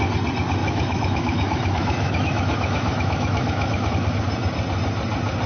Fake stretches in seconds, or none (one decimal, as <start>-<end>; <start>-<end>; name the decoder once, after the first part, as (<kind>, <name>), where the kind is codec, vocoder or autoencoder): 0.6-3.9 (autoencoder, DAC-VAE)